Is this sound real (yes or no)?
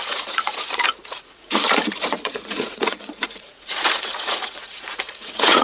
no